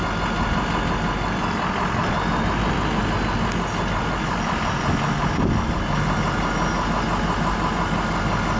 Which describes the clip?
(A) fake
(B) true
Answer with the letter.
B